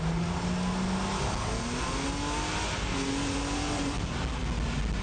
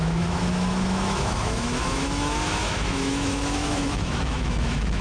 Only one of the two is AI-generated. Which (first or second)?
second